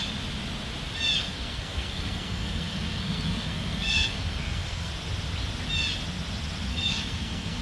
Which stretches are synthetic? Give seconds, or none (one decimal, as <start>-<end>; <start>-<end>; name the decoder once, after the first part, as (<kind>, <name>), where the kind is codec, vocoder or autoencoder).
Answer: 1.2-4.9 (codec, SNAC); 6.7-7.6

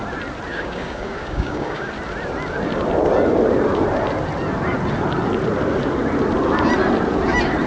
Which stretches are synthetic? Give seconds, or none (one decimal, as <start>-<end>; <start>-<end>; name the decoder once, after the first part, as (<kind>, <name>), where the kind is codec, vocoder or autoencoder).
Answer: 0.5-1.9 (codec, DAC)